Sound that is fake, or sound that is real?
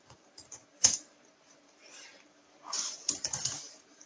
fake